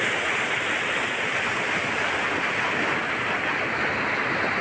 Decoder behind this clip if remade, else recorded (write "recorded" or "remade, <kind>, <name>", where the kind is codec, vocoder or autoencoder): recorded